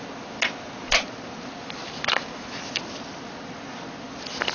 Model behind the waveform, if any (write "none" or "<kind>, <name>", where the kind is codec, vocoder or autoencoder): none